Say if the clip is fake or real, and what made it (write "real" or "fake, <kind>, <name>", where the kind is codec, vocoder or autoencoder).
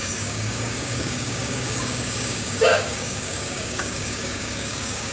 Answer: fake, codec, DAC